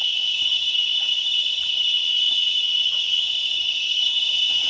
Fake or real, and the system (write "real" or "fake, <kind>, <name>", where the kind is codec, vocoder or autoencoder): fake, vocoder, HiFi-GAN